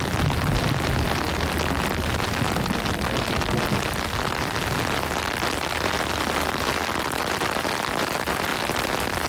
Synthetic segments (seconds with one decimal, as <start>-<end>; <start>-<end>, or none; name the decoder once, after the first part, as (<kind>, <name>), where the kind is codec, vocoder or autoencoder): none